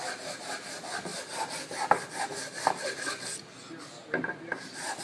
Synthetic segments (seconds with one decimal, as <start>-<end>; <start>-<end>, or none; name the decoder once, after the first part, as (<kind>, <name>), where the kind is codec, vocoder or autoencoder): none